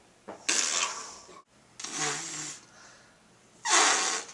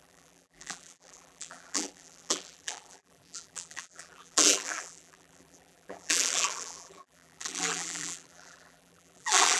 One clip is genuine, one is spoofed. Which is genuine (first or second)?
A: first